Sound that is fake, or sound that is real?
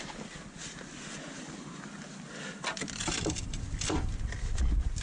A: fake